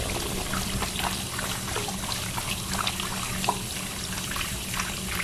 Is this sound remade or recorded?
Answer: recorded